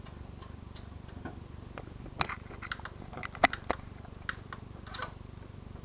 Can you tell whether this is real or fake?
real